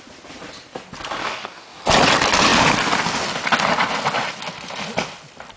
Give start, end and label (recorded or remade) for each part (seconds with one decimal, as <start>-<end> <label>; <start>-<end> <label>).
0.0-1.2 recorded; 1.2-1.8 remade; 1.8-5.6 recorded